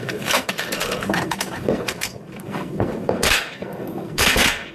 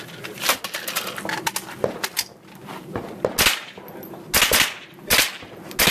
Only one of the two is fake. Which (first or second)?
first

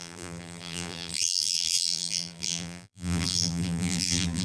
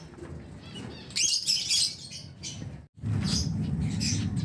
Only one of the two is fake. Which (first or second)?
first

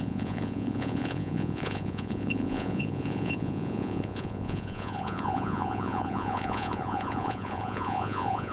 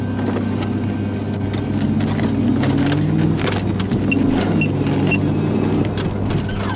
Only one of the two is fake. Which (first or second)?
first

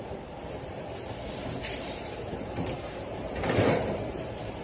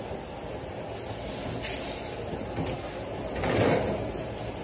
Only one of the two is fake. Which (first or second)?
first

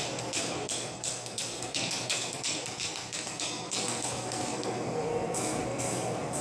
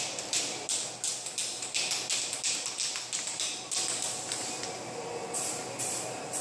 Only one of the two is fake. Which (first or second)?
first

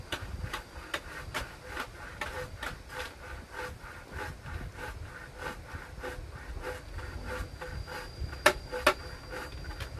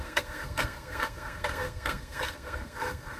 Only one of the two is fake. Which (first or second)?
second